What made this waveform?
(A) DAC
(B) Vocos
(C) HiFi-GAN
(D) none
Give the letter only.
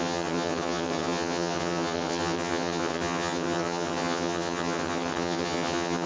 C